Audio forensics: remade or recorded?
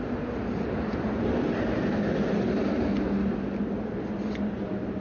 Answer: recorded